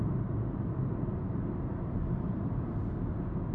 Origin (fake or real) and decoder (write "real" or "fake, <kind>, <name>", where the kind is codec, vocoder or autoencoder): real